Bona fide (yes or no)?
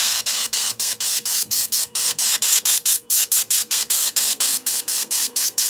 no